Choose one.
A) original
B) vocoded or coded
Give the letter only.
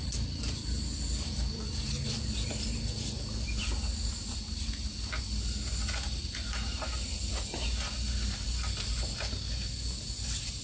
A